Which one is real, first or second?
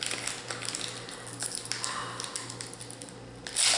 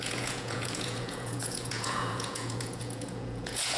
first